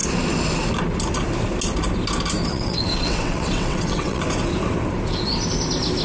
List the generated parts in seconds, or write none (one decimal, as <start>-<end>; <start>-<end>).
2.5-4.2